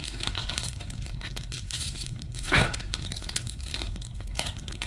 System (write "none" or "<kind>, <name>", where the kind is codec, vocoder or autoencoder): codec, SNAC